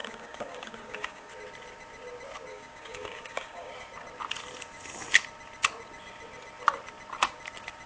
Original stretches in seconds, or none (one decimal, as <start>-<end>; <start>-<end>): 1.3-2.5; 3.7-7.9